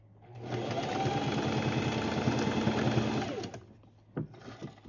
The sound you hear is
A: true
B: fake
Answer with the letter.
A